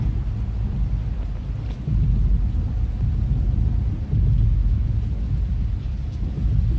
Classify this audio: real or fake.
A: real